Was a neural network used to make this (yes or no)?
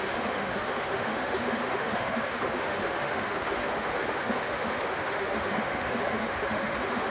yes